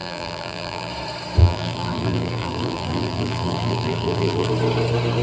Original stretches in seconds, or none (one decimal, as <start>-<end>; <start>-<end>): 0.9-1.4; 4.5-5.2